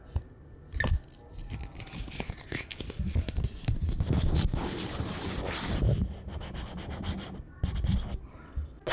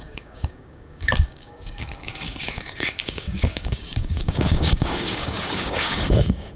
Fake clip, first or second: second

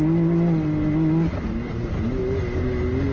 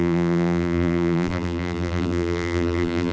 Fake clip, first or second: second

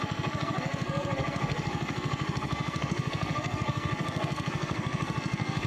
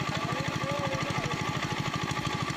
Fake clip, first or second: first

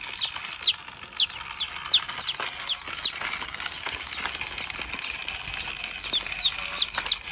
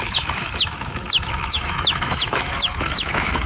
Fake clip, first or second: second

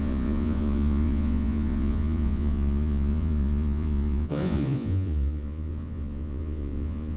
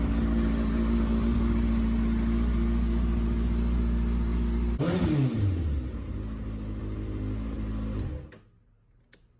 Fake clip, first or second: first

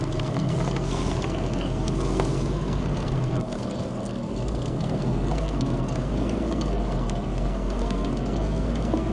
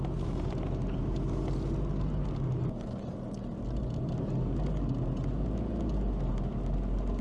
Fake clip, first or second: first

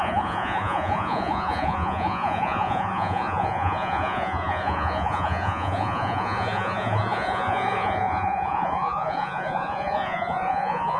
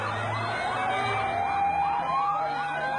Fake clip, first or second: first